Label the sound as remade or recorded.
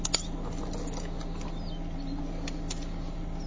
recorded